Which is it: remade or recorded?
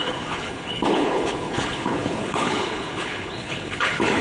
remade